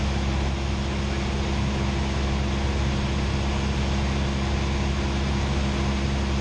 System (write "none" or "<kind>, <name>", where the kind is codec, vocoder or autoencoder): none